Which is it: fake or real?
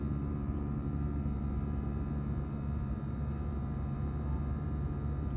fake